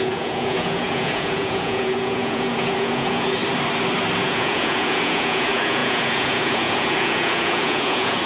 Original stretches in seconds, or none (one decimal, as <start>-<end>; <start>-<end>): 3.4-4.2